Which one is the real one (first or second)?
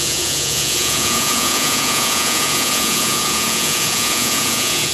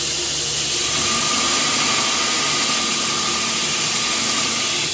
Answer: second